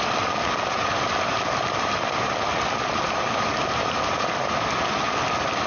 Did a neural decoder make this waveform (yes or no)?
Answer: no